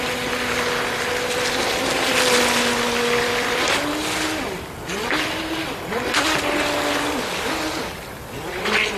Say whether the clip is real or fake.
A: real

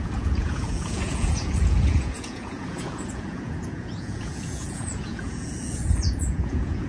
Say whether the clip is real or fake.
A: fake